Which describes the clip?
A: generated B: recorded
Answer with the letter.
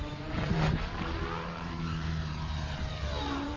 A